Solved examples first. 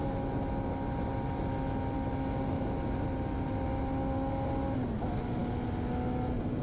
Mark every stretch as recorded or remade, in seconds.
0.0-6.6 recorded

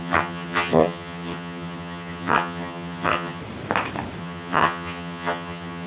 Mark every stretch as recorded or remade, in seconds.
0.0-3.4 remade; 3.4-4.2 recorded; 4.2-5.9 remade

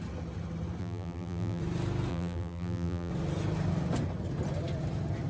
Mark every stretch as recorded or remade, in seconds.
0.0-0.8 recorded; 0.8-1.6 remade; 1.6-2.1 recorded; 2.1-3.1 remade; 3.1-5.3 recorded

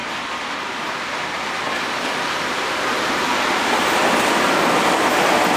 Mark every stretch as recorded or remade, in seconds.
0.0-0.7 recorded; 0.7-5.6 remade

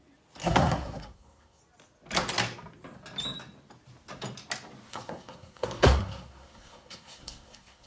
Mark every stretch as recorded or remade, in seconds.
0.0-0.4 recorded; 0.4-1.6 remade; 1.6-4.9 recorded; 4.9-7.9 remade